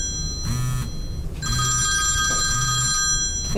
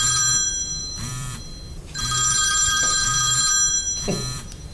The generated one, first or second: second